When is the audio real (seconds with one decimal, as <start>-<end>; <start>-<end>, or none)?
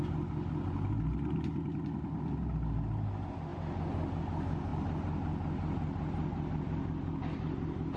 0.0-8.0